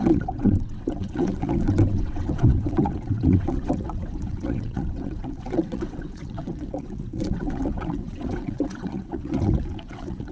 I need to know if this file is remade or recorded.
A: remade